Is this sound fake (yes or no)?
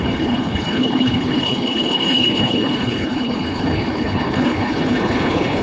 yes